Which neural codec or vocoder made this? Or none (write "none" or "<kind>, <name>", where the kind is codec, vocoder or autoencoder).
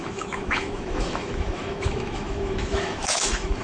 autoencoder, DAC-VAE